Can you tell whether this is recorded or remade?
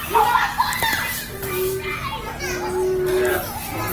recorded